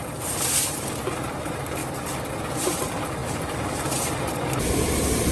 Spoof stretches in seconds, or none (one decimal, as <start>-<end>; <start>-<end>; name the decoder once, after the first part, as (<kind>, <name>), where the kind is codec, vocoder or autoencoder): 0.0-1.8 (vocoder, BigVGAN v2); 2.8-5.3